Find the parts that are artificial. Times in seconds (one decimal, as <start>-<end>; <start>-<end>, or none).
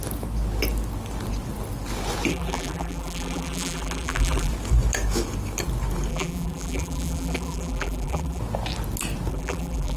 2.3-4.5; 6.1-8.4; 9.3-10.0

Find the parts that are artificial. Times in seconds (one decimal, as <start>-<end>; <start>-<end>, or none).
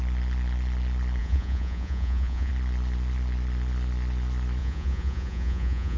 1.2-2.5; 4.6-6.0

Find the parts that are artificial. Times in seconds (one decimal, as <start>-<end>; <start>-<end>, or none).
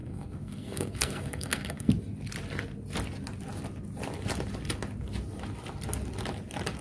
0.0-1.9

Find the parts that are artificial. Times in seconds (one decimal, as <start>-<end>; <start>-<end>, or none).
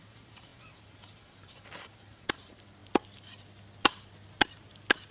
0.0-2.8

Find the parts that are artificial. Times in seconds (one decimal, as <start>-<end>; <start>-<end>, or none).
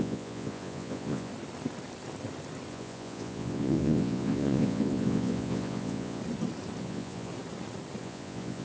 0.0-1.3; 2.7-6.2; 6.8-7.3; 8.0-8.6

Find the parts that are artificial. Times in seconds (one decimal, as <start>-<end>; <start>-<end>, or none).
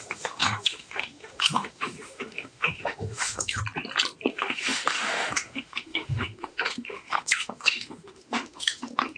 0.0-3.6; 4.3-9.2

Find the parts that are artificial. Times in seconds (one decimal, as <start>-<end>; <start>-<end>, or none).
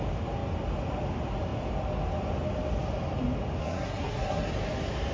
3.6-4.5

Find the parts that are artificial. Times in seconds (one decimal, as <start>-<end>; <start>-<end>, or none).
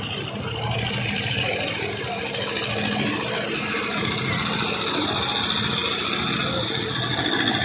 none